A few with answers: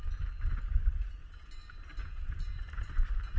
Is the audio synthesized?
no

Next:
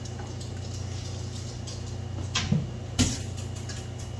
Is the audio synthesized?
no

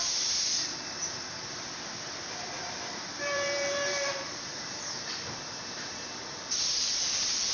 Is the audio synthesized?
yes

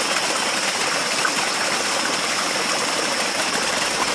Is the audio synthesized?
no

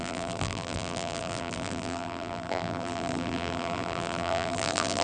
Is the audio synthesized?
yes